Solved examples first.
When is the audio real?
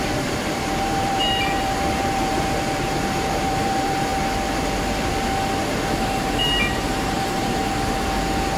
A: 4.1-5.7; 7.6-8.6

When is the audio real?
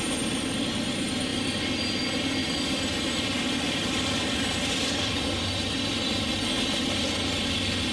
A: 0.0-1.3; 1.9-2.4; 6.4-7.9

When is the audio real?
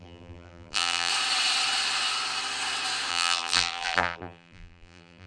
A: 1.1-3.1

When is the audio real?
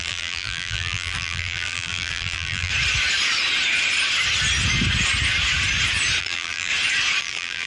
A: 2.7-6.2; 6.7-7.2